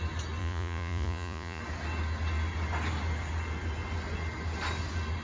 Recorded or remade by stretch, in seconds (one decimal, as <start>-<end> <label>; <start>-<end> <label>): 0.0-0.4 recorded; 0.4-1.6 remade; 1.6-5.2 recorded